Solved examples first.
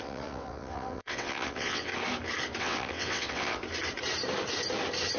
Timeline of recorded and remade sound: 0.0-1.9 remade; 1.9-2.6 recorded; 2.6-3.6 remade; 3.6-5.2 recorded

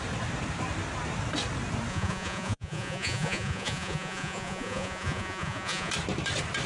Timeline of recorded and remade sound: 0.0-1.9 recorded; 1.9-5.9 remade; 5.9-6.7 recorded